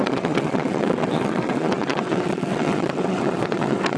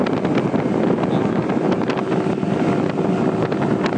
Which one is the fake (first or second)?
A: first